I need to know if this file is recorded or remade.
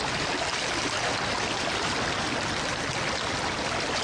recorded